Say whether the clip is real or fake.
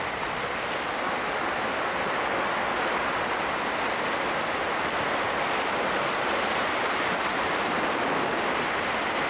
real